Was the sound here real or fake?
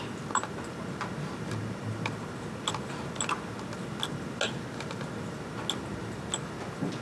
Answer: real